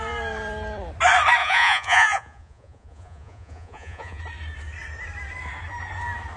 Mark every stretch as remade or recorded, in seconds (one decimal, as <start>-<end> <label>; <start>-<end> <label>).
0.0-1.4 recorded; 1.4-4.2 remade; 4.2-6.4 recorded